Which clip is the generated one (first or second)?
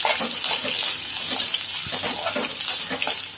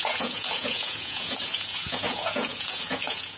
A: second